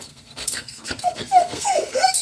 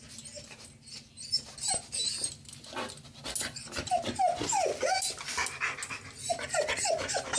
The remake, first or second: first